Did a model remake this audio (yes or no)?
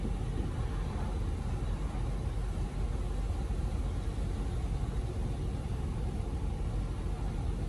no